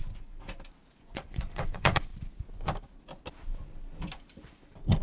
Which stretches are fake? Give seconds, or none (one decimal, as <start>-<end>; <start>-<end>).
1.0-2.1